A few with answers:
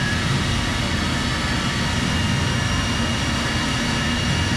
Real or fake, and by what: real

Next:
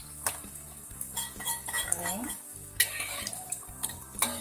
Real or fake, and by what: fake, codec, DAC